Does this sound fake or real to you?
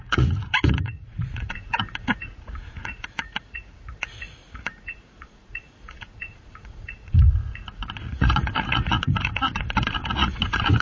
fake